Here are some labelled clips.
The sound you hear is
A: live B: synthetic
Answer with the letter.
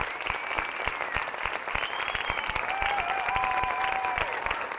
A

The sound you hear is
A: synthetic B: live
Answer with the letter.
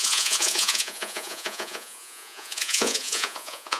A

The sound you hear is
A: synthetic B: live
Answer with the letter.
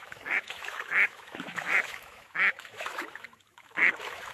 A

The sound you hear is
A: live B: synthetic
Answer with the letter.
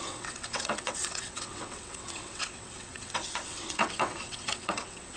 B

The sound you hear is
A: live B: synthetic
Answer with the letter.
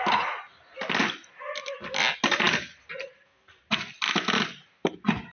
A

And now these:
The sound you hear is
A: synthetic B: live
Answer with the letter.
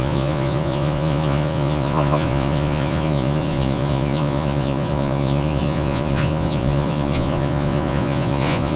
A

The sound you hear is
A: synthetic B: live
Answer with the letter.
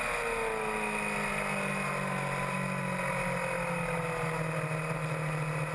B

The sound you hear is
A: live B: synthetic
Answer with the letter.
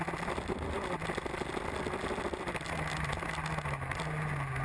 A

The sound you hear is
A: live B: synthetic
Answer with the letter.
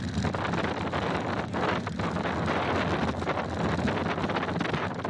A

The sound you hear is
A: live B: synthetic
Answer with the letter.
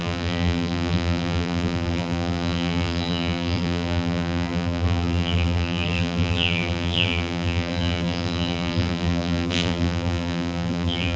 B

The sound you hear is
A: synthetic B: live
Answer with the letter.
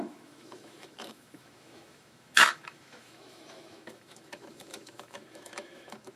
A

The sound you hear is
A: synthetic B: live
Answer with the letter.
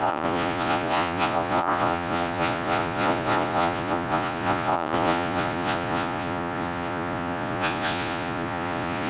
A